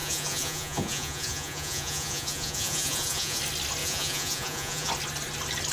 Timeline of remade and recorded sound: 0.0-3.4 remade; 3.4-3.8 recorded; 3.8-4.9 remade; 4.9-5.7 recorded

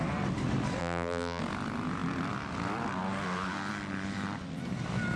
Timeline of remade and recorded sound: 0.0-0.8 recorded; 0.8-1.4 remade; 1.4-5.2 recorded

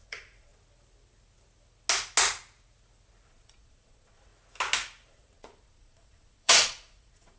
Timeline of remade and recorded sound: 0.0-0.5 remade; 0.5-3.3 recorded; 3.3-4.3 remade; 4.3-5.1 recorded; 5.1-7.4 remade